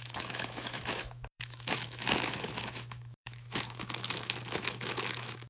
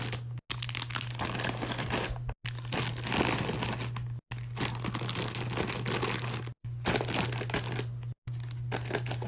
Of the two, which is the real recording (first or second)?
second